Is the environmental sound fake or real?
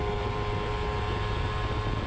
real